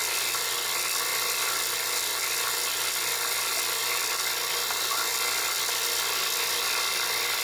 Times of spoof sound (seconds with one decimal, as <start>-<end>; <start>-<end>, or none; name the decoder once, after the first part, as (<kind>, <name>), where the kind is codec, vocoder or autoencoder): none